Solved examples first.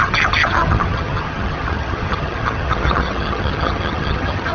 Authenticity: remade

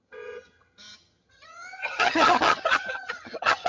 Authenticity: remade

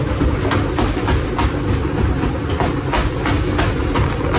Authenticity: recorded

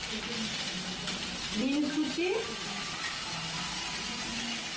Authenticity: recorded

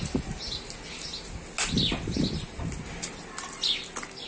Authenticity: recorded